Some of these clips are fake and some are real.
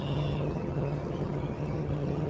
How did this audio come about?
fake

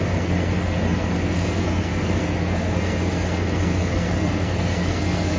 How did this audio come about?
fake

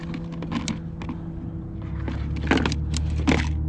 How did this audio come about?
real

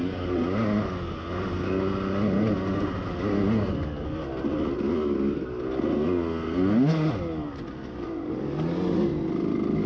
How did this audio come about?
real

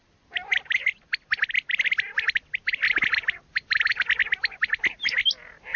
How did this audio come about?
real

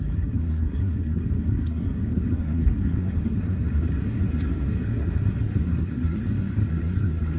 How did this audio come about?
fake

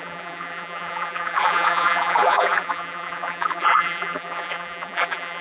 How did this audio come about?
fake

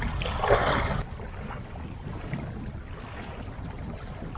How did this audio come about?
real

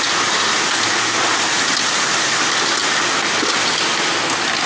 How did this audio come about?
real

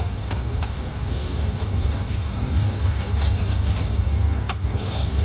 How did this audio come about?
fake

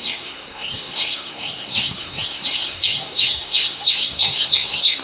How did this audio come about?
fake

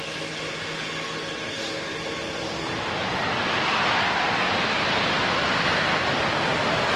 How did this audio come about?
real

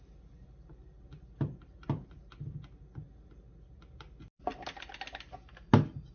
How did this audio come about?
real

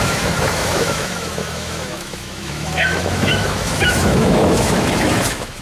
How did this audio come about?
fake